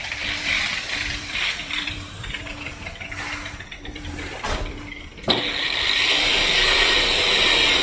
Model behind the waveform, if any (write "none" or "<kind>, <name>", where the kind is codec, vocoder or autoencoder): vocoder, BigVGAN v2